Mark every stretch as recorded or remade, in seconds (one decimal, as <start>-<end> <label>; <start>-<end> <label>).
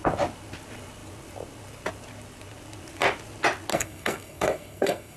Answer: 0.0-3.7 recorded; 3.7-5.2 remade